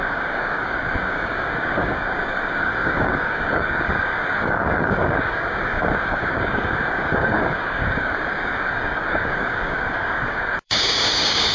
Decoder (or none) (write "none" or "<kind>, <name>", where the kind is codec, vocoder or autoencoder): codec, DAC